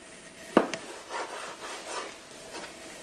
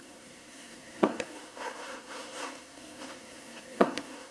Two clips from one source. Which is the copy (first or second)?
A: second